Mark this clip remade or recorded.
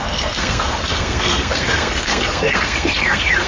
remade